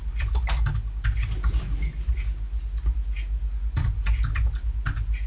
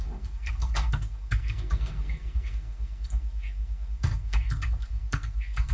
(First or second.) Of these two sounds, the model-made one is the second